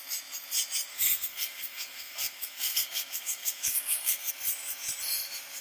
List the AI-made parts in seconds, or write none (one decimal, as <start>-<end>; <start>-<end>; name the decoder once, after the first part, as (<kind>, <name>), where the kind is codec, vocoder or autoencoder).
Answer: 0.9-4.3 (codec, SNAC)